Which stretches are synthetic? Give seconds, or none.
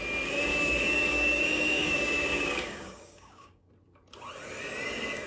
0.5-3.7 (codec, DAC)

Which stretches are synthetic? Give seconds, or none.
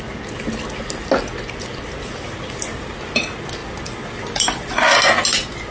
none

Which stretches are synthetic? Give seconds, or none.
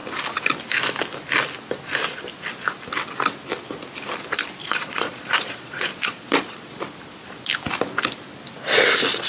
4.6-6.8 (vocoder, Vocos)